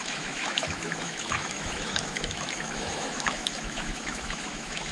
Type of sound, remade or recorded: remade